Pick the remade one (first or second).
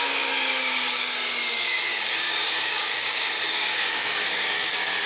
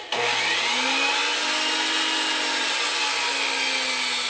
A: first